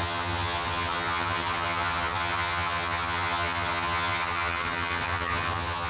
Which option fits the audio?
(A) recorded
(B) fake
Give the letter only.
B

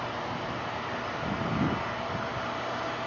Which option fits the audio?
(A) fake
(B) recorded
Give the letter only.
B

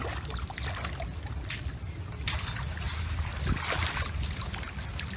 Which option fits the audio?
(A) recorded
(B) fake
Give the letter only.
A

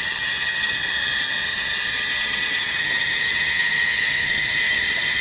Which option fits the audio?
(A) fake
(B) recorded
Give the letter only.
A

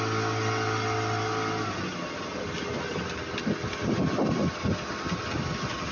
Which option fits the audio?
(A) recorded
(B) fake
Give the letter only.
A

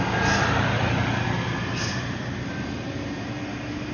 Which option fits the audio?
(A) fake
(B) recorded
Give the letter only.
B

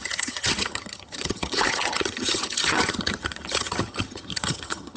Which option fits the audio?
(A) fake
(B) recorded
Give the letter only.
A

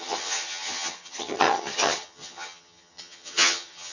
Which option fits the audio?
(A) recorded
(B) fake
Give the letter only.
B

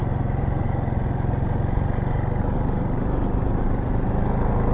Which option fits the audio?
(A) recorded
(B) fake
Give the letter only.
A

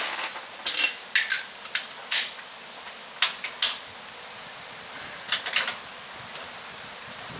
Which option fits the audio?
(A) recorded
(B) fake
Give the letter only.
A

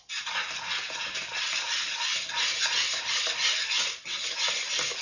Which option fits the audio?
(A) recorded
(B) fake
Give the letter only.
A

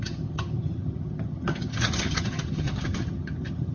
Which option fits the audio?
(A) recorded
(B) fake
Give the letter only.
B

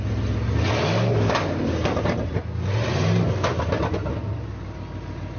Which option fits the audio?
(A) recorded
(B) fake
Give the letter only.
A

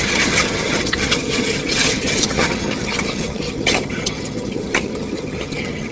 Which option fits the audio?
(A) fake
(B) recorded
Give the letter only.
A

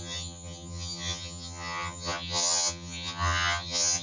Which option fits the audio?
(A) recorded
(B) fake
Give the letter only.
B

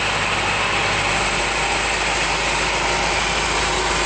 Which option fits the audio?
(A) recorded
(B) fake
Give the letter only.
A